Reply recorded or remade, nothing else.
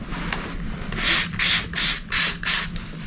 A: recorded